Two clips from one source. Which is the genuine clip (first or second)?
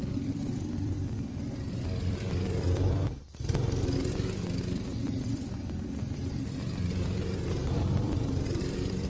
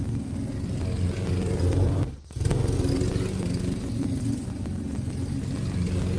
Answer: second